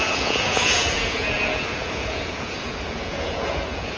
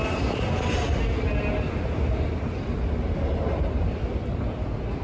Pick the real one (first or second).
second